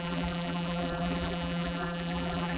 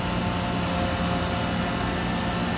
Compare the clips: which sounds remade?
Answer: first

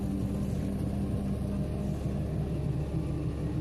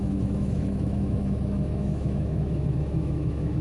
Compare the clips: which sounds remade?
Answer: second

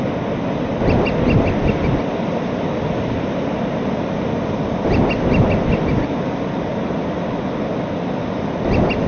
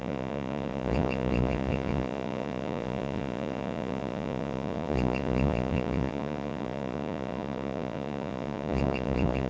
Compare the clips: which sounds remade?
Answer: second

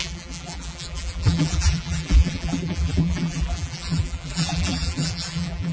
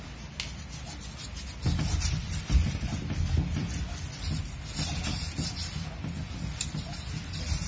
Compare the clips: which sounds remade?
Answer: first